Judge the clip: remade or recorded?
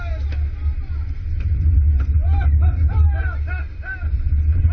recorded